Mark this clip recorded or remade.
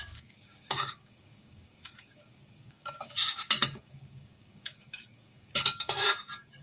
remade